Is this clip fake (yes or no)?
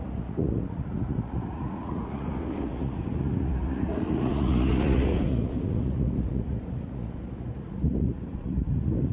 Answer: yes